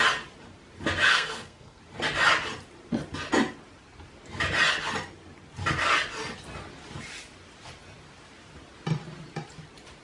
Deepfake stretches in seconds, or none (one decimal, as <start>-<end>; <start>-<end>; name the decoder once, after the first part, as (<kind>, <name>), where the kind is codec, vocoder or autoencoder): 1.1-1.8 (codec, SNAC)